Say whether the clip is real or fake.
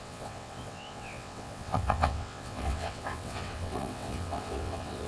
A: fake